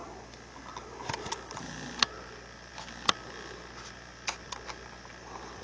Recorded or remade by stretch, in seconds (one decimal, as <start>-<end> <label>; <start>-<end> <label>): 0.0-5.6 recorded